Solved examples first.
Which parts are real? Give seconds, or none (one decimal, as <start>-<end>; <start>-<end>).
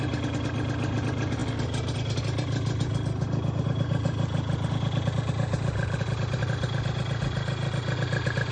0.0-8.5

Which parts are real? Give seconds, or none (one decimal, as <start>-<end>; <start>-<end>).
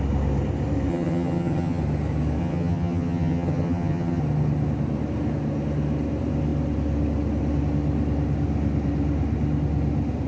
0.0-0.9; 1.8-2.4; 4.2-10.3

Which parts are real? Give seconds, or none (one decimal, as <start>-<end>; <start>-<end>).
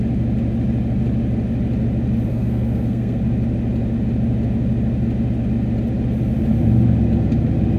0.0-2.3; 3.2-7.8